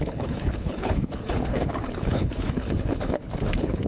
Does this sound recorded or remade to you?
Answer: remade